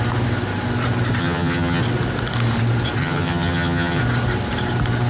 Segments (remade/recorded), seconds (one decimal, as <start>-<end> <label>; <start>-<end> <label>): 0.0-1.2 recorded; 1.2-1.8 remade; 1.8-3.0 recorded; 3.0-4.0 remade; 4.0-5.1 recorded